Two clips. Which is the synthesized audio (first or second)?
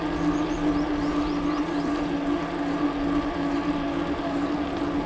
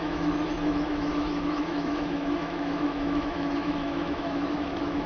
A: second